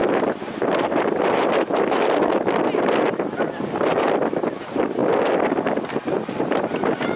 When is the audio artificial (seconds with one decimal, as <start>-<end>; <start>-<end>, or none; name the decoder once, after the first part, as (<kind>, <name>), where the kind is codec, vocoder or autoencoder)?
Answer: none